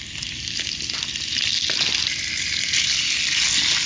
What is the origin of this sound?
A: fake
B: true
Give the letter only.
B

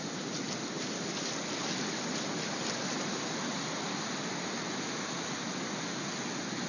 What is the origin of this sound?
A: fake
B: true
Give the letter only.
B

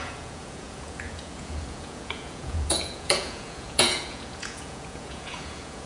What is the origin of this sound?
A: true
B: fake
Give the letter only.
B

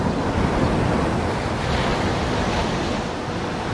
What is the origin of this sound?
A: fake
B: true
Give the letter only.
B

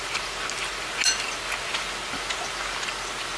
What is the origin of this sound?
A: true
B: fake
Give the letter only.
A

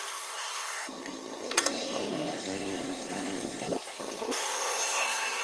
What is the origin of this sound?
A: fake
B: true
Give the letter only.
A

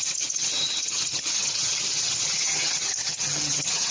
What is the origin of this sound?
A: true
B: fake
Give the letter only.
B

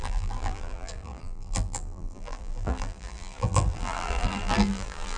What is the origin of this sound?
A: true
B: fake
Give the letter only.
B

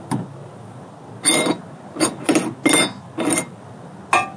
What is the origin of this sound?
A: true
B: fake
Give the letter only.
A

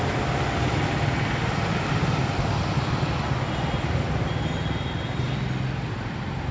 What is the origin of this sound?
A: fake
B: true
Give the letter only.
B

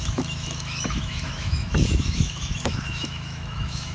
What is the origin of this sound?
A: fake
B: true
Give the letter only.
A